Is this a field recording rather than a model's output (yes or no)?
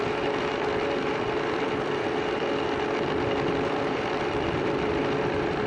yes